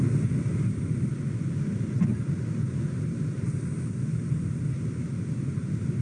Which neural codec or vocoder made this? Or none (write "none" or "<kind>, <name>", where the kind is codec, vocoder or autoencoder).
none